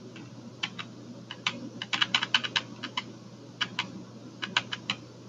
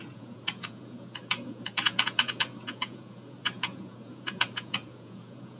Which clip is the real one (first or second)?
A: first